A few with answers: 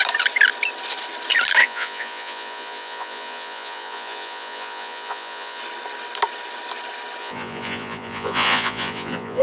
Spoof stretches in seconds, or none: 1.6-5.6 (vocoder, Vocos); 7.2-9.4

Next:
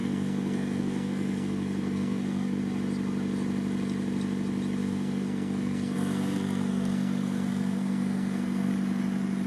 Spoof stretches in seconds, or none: 0.0-2.6 (codec, SNAC); 4.8-8.7